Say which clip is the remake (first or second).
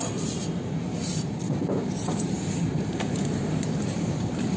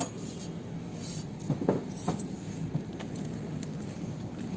first